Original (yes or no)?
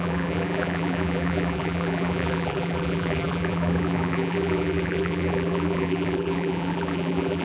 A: no